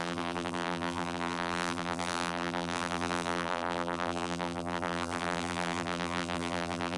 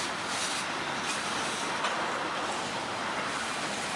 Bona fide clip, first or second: second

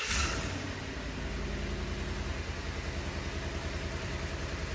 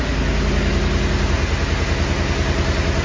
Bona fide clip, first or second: second